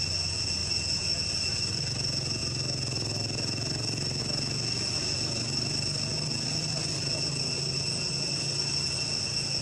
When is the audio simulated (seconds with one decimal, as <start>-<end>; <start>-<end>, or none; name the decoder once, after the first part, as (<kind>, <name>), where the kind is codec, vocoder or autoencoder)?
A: none